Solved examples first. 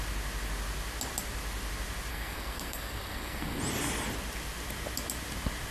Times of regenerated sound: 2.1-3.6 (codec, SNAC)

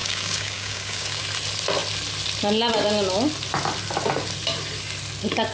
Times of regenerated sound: 0.0-1.2 (codec, DAC)

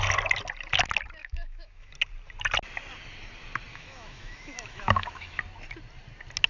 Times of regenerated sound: 1.2-1.9 (autoencoder, DAC-VAE); 3.7-5.4